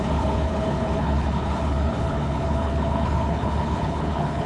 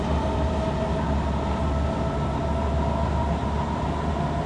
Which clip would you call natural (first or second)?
second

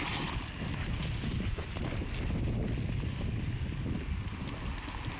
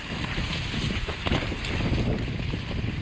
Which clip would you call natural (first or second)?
first